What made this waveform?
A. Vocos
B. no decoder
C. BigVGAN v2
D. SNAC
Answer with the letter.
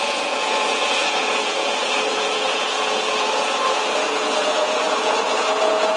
A